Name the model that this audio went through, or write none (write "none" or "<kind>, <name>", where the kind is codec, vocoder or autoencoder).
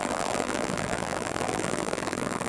vocoder, BigVGAN v2